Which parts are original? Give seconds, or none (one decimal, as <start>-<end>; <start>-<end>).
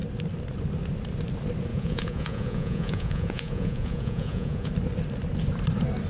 0.0-1.7; 4.7-6.1